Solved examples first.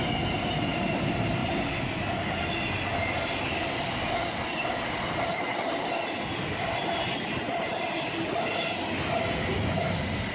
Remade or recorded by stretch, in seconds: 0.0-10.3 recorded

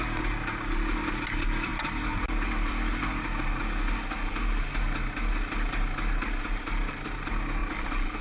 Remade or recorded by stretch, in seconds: 0.0-7.6 recorded; 7.6-8.2 remade

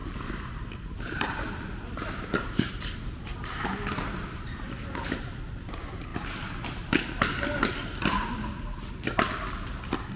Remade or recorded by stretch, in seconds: 0.0-3.2 remade; 3.2-10.2 recorded

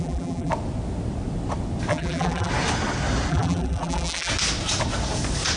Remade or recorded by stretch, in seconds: 0.0-0.5 remade; 0.5-1.9 recorded; 1.9-2.5 remade; 2.5-3.3 recorded; 3.3-4.3 remade; 4.3-5.6 recorded

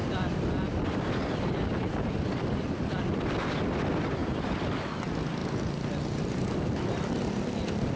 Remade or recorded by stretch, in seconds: 0.0-2.2 remade; 2.2-4.2 recorded; 4.2-4.8 remade; 4.8-8.0 recorded

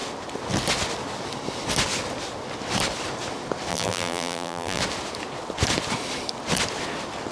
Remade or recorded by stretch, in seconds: 0.0-3.7 recorded; 3.7-4.8 remade; 4.8-7.3 recorded